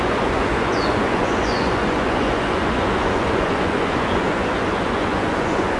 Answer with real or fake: fake